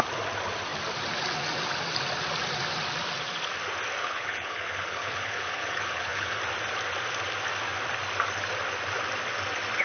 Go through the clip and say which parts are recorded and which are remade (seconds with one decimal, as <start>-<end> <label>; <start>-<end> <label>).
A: 0.0-4.0 recorded; 4.0-6.4 remade; 6.4-9.8 recorded

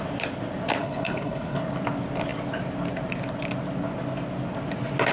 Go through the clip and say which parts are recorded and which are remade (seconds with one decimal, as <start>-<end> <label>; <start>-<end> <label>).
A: 0.0-0.8 recorded; 0.8-1.6 remade; 1.6-5.1 recorded

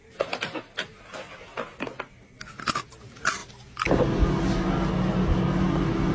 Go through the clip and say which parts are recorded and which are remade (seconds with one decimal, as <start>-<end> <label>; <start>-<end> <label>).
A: 0.0-6.1 recorded

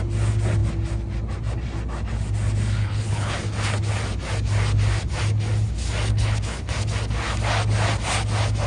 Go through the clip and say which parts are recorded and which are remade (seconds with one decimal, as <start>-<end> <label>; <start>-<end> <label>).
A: 0.0-2.8 recorded; 2.8-3.4 remade; 3.4-6.1 recorded; 6.1-6.7 remade; 6.7-8.7 recorded

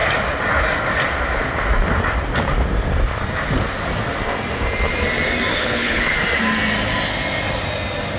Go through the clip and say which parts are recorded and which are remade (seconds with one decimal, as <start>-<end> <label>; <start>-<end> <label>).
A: 0.0-5.5 recorded; 5.5-6.1 remade; 6.1-8.2 recorded

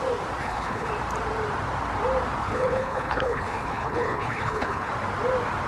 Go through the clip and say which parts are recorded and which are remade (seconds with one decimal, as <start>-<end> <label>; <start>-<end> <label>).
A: 0.0-0.4 recorded; 0.4-0.9 remade; 0.9-2.4 recorded; 2.4-4.9 remade; 4.9-5.7 recorded